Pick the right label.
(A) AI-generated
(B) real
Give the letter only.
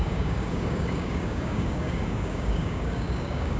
A